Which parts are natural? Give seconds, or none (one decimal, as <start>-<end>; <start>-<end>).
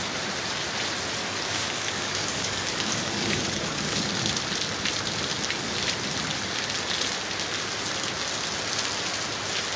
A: 0.0-1.2; 4.1-9.8